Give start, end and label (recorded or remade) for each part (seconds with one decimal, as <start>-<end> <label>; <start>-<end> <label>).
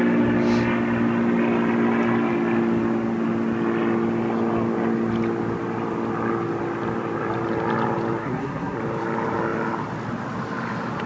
0.0-8.2 recorded; 8.2-8.8 remade; 8.8-11.1 recorded